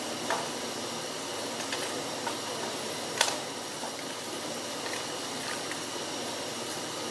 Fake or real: real